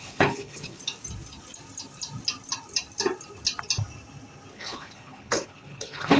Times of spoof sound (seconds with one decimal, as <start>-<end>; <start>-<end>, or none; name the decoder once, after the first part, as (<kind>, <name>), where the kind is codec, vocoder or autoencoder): 0.0-0.8 (codec, HILCodec); 4.5-6.2